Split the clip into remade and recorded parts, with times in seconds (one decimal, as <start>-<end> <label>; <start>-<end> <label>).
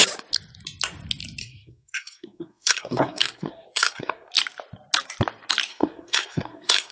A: 0.0-1.4 recorded; 1.4-4.3 remade; 4.3-5.7 recorded; 5.7-6.9 remade